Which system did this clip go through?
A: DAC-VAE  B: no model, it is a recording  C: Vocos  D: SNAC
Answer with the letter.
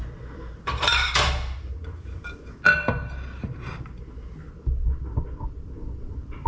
B